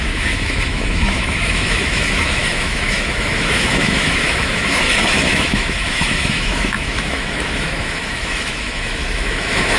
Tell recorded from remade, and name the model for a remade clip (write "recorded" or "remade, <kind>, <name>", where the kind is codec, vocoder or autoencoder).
remade, autoencoder, DAC-VAE